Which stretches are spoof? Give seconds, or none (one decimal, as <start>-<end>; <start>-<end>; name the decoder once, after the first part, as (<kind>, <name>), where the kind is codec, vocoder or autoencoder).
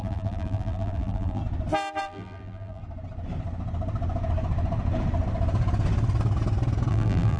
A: 0.0-1.4 (vocoder, BigVGAN v2); 2.0-2.8; 6.9-7.4